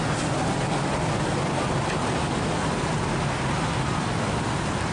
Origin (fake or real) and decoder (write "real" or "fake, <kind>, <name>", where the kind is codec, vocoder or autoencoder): real